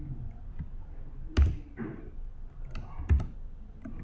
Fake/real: real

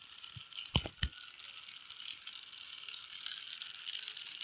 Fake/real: real